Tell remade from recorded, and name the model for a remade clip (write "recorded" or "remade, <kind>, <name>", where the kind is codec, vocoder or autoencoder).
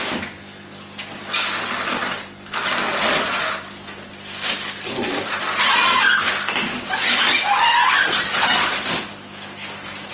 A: recorded